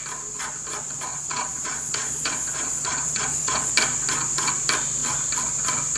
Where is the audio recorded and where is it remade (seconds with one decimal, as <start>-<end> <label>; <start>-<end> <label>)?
0.0-1.1 recorded; 1.1-3.7 remade; 3.7-6.0 recorded